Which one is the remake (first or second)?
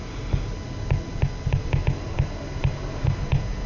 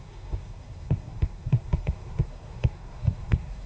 second